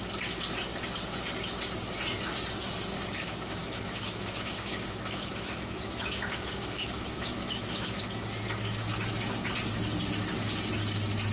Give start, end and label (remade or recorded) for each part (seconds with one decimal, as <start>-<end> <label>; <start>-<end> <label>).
0.0-3.6 recorded; 3.6-8.0 remade; 8.0-11.3 recorded